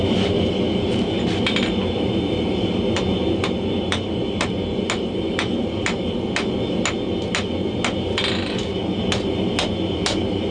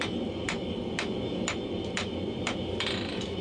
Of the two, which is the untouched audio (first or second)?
first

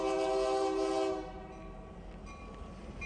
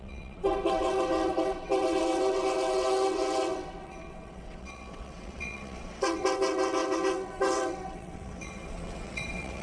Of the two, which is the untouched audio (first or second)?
first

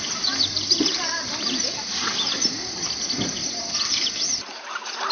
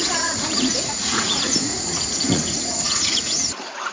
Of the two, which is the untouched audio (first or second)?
first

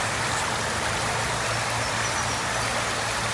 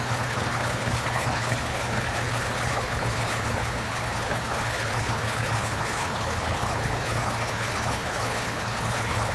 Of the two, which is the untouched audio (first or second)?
first